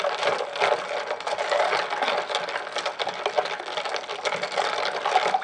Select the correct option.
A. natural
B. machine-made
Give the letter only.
A